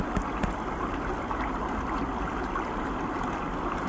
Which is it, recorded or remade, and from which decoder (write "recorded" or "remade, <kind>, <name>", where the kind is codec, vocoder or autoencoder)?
recorded